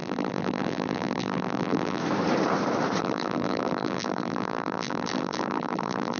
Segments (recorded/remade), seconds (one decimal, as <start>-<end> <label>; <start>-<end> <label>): 0.0-2.0 remade; 2.0-3.0 recorded; 3.0-6.2 remade